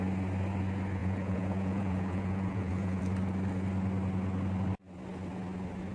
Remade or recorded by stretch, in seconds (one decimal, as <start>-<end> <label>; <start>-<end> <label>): 0.0-1.0 recorded; 1.0-3.0 remade; 3.0-5.9 recorded